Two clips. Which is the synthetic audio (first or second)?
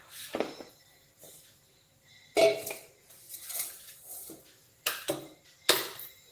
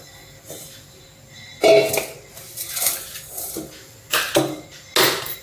first